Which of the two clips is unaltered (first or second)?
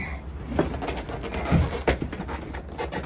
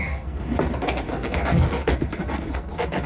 first